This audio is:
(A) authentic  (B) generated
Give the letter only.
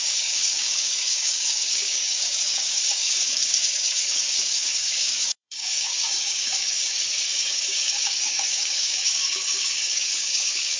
B